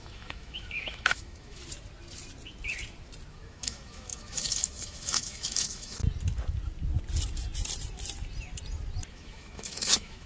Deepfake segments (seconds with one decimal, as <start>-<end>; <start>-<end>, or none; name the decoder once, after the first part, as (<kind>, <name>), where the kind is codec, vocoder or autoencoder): 0.0-1.6 (autoencoder, DAC-VAE); 3.3-6.0; 9.1-10.3